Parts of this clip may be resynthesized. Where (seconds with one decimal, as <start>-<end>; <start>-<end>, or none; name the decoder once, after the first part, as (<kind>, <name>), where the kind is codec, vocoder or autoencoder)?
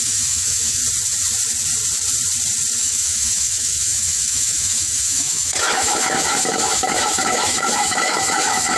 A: 0.0-0.8 (autoencoder, DAC-VAE); 2.8-8.8